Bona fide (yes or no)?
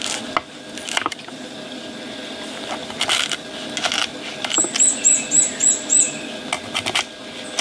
yes